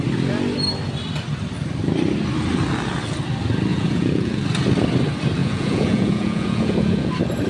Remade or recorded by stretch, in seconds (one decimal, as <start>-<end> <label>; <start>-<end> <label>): 0.0-3.7 recorded; 3.7-4.4 remade; 4.4-5.4 recorded; 5.4-7.1 remade; 7.1-7.5 recorded